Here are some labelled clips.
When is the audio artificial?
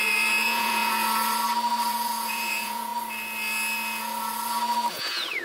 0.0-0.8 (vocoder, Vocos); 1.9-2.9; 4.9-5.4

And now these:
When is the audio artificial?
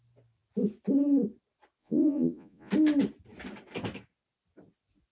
1.8-2.7 (vocoder, Vocos)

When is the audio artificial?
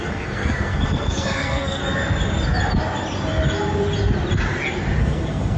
0.0-1.8 (codec, SNAC); 5.0-5.6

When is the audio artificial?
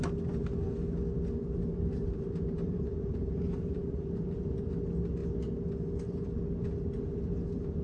1.7-4.7 (vocoder, BigVGAN v2)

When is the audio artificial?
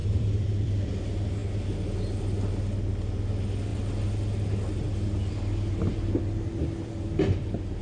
0.0-0.9 (vocoder, BigVGAN v2)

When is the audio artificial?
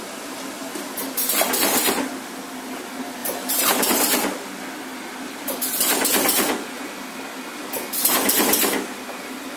3.2-3.9 (vocoder, BigVGAN v2)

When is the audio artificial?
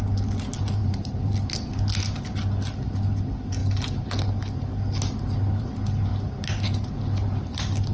0.8-1.3 (vocoder, BigVGAN v2)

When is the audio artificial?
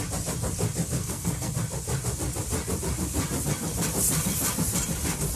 1.0-1.5 (codec, SNAC)